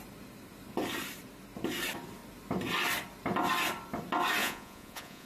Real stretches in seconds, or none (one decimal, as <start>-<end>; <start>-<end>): 0.0-4.4